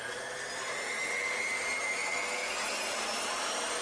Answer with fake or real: real